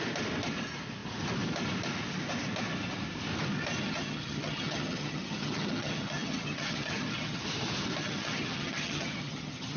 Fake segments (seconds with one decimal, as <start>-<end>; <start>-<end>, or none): 3.8-7.4; 8.0-9.8